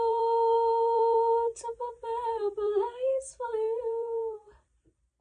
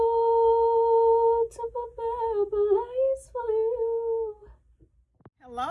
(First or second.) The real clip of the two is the second